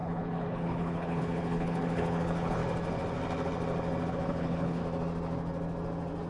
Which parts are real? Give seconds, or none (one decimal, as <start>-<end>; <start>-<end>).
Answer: 2.6-4.1; 4.8-6.3

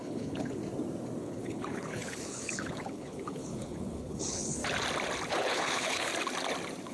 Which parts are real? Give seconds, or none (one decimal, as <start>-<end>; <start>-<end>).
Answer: 0.6-1.2; 4.6-5.3; 6.1-6.9

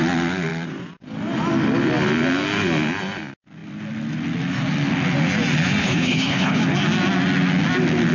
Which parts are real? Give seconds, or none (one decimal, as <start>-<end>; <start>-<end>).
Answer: 0.0-5.8; 6.6-8.1

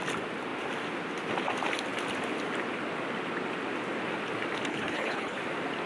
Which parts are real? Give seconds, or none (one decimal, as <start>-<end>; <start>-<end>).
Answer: 0.0-4.7; 5.4-5.9

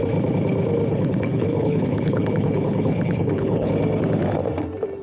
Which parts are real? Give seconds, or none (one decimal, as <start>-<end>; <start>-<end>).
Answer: 0.0-0.9; 3.7-5.0

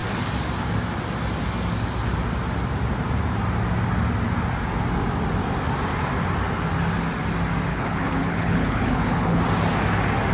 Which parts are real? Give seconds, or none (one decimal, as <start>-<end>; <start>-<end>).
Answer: 0.0-7.7; 9.4-10.3

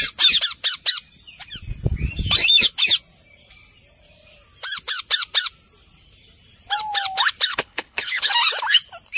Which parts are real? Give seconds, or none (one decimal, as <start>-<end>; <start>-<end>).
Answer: 0.0-7.5; 8.3-9.2